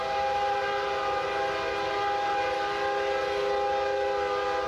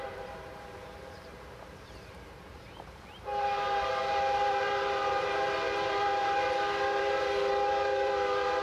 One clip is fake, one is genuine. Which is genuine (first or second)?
first